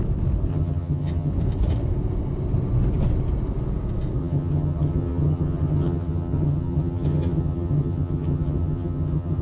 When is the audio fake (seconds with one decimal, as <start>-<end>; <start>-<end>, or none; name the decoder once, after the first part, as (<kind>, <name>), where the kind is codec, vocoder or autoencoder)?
0.5-1.3 (vocoder, HiFi-GAN); 4.2-9.4